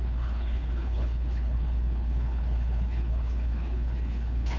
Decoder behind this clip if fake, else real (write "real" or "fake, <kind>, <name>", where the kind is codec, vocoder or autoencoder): fake, codec, HILCodec